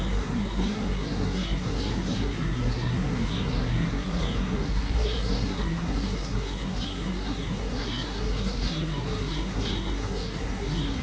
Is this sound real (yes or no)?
no